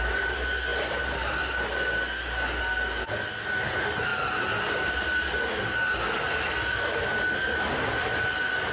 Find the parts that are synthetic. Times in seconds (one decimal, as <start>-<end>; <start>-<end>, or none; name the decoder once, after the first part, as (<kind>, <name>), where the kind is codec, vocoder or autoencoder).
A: none